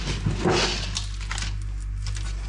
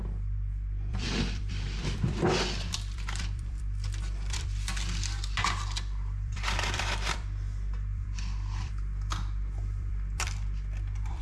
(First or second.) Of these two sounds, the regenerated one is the second